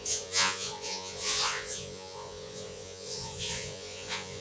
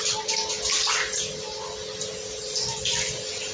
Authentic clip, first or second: second